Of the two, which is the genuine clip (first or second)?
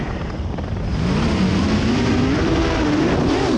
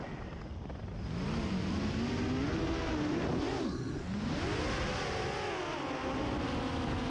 second